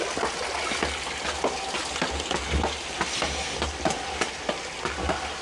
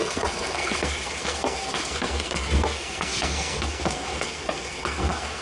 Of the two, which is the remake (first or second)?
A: second